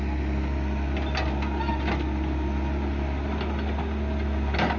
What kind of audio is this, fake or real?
real